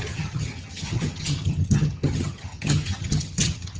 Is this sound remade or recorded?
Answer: remade